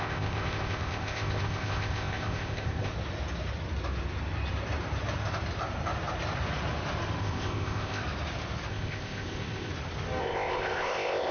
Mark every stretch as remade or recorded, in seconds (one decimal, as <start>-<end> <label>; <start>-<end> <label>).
0.0-2.9 remade; 2.9-7.2 recorded; 7.2-8.0 remade; 8.0-8.7 recorded; 8.7-9.7 remade; 9.7-10.2 recorded; 10.2-11.3 remade